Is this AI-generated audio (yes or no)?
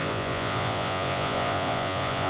yes